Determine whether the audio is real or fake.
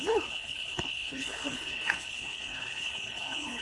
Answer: fake